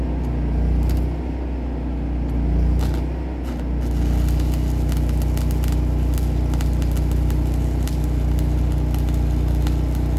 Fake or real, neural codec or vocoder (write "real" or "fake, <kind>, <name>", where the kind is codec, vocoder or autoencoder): real